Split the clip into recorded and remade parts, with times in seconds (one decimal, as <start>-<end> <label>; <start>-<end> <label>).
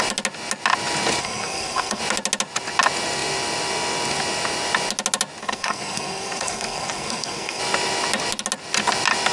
0.0-1.2 recorded; 1.2-2.0 remade; 2.0-5.4 recorded; 5.4-7.6 remade; 7.6-9.3 recorded